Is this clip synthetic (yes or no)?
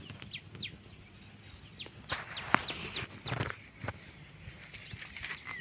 no